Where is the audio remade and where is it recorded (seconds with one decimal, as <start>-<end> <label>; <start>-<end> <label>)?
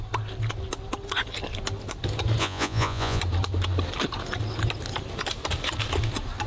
0.0-2.4 recorded; 2.4-3.2 remade; 3.2-6.5 recorded